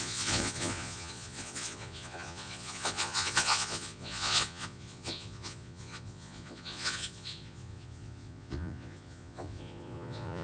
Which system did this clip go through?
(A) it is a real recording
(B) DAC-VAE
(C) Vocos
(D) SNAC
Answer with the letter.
C